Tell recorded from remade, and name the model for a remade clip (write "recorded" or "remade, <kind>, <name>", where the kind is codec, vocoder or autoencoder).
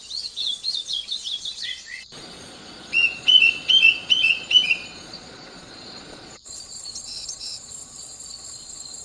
remade, vocoder, Vocos